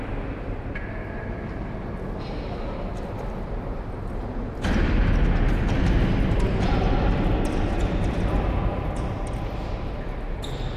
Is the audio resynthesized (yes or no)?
no